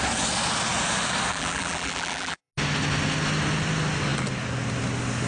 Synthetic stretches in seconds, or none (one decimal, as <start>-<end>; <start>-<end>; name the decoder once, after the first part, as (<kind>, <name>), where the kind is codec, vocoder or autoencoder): 1.3-2.5 (vocoder, BigVGAN v2)